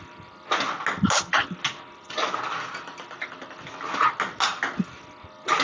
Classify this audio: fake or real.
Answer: real